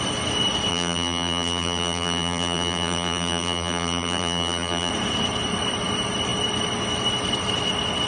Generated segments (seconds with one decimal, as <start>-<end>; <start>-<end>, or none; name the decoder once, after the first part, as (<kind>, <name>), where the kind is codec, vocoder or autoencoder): 0.7-4.9 (vocoder, BigVGAN v2)